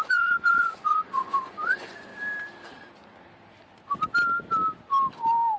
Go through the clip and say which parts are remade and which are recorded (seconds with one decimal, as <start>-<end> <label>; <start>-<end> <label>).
0.0-2.1 remade; 2.1-5.6 recorded